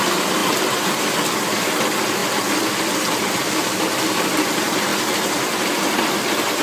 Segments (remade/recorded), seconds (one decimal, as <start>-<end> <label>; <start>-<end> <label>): 0.0-4.9 remade; 4.9-6.6 recorded